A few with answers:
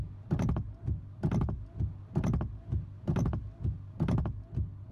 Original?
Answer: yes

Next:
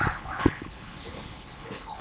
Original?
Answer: no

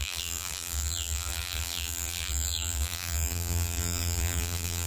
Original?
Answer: no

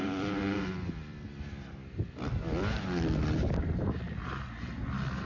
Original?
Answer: yes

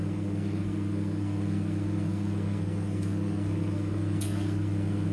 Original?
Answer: no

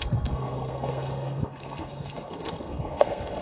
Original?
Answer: no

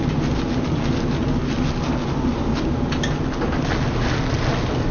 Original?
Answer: yes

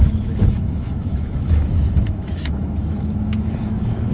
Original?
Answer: no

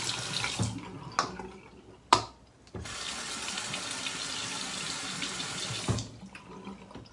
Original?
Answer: yes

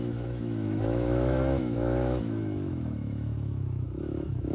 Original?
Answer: no